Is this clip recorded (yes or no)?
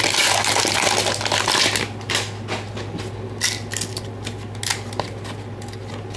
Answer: yes